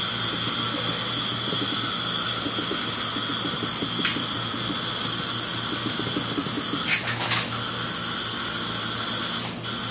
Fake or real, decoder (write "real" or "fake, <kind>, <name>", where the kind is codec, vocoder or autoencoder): real